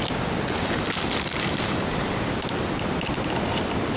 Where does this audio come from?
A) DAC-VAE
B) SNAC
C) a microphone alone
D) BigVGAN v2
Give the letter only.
C